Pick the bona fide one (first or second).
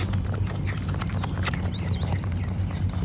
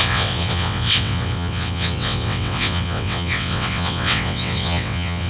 first